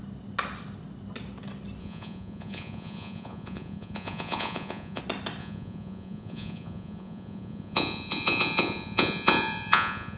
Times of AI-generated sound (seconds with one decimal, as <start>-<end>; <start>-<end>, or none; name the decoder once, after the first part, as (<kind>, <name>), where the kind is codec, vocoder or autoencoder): 1.8-5.0 (vocoder, Vocos); 5.4-10.2